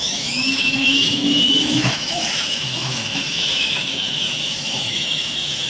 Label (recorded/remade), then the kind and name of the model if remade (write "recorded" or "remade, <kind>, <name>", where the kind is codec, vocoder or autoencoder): remade, autoencoder, DAC-VAE